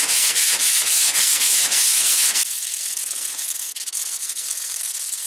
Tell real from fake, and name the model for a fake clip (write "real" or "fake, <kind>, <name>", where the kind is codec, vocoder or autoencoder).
fake, codec, SNAC